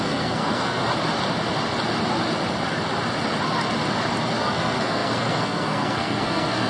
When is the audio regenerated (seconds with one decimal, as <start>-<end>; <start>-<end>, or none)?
0.0-0.8; 4.4-6.7